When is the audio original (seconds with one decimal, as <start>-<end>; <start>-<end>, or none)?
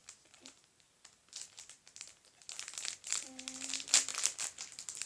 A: 0.0-5.1